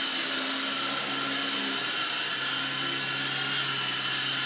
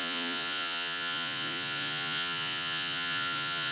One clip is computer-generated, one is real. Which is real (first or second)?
first